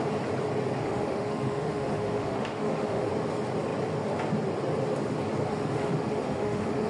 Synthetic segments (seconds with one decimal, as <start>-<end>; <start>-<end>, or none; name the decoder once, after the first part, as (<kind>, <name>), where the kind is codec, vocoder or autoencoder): 0.8-3.1 (autoencoder, DAC-VAE); 5.5-6.9